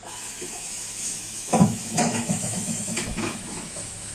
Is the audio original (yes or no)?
no